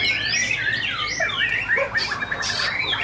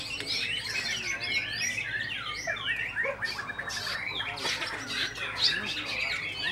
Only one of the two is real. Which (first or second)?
second